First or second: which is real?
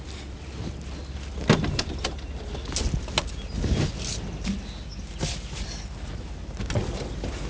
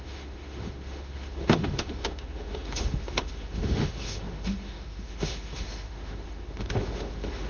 first